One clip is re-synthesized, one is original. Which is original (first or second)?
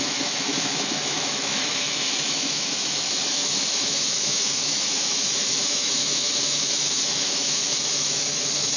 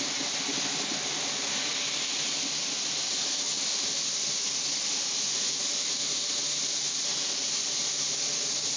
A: second